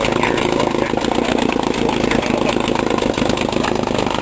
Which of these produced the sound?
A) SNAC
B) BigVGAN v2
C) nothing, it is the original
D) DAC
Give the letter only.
C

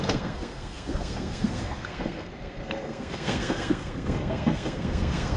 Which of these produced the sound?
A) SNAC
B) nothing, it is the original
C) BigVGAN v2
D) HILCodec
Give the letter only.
A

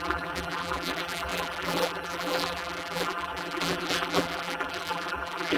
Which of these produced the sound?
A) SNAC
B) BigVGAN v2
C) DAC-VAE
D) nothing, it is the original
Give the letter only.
B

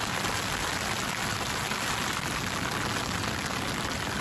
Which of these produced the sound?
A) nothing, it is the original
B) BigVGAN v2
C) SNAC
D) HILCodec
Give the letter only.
A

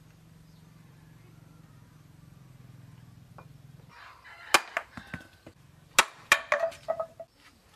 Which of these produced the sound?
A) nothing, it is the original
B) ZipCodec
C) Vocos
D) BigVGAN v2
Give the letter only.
A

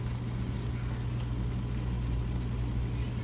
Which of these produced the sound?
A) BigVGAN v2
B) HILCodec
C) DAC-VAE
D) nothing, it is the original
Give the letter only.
D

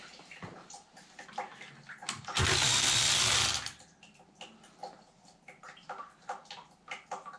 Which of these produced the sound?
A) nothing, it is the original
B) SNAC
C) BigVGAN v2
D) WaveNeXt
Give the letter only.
A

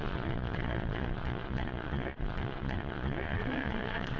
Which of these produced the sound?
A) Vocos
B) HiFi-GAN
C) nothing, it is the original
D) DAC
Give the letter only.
A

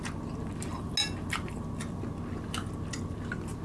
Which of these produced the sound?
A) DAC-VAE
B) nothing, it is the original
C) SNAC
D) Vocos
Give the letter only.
B